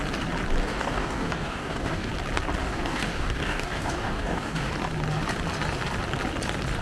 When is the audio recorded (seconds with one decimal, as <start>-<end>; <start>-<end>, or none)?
0.0-0.6; 2.1-2.6; 4.7-6.8